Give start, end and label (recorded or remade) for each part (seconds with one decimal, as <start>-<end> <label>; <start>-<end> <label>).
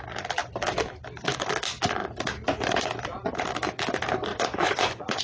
0.0-4.3 recorded; 4.3-5.2 remade